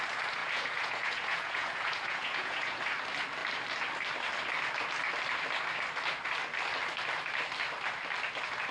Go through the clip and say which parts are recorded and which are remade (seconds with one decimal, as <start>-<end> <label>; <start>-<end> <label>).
0.0-0.4 recorded; 0.4-2.8 remade; 2.8-8.7 recorded